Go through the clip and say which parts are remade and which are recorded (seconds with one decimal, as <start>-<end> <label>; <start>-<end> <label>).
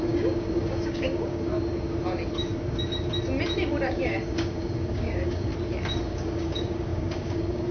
0.0-1.5 remade; 1.5-3.9 recorded; 3.9-5.5 remade; 5.5-6.1 recorded; 6.1-7.7 remade